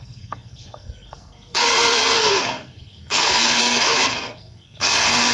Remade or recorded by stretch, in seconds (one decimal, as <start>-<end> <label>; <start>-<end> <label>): 0.0-5.3 remade